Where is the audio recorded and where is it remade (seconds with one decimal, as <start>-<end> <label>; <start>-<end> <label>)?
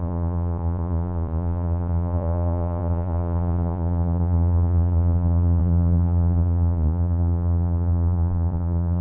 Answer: 0.0-9.0 remade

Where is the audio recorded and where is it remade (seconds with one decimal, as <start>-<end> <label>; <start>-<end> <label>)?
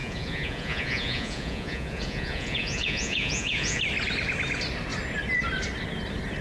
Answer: 0.0-3.8 remade; 3.8-6.4 recorded